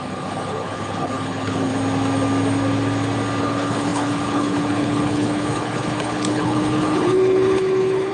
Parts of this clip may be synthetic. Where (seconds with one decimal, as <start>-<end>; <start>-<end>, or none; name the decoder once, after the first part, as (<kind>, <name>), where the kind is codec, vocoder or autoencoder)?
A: 0.0-1.7 (codec, HILCodec); 3.4-8.1